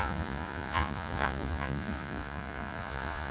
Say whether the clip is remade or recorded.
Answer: remade